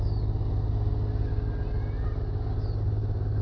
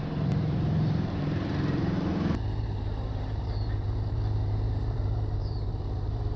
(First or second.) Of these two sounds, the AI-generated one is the second